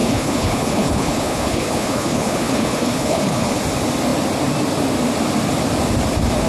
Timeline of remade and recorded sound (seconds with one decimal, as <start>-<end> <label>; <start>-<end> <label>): 0.0-3.6 remade; 3.6-6.5 recorded